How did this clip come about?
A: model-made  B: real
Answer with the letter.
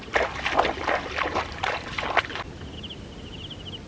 B